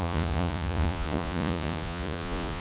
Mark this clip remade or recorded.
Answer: remade